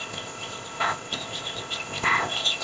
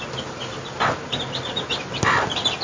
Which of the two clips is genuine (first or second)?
second